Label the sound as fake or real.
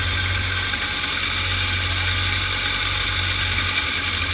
real